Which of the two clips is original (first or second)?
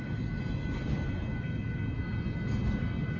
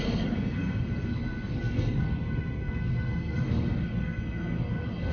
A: first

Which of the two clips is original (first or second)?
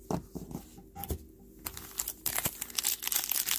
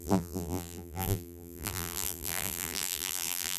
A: first